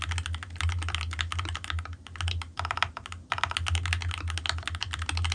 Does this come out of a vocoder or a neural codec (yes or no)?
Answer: no